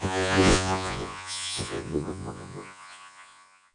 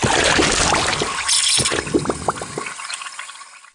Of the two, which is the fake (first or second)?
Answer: first